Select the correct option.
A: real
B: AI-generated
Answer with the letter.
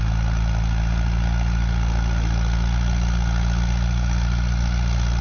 A